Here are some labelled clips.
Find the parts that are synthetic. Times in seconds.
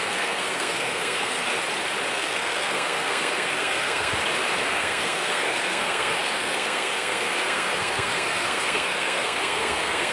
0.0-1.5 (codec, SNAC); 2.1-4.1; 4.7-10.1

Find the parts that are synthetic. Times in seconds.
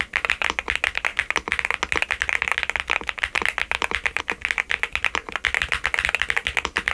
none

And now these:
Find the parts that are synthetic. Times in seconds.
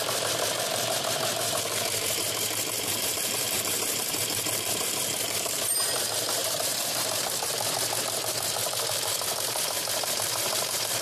0.0-11.0 (vocoder, BigVGAN v2)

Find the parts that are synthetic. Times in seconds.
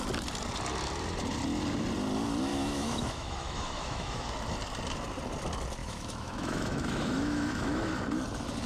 2.5-4.3 (autoencoder, DAC-VAE); 5.8-7.9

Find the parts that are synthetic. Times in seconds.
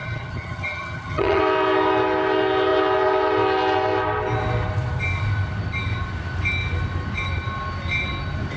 0.0-1.4 (vocoder, HiFi-GAN)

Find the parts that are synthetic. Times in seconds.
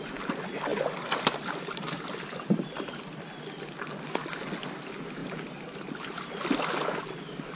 none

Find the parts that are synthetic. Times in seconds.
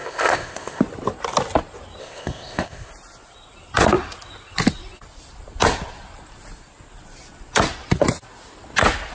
0.0-0.8 (codec, ZipCodec); 2.0-2.9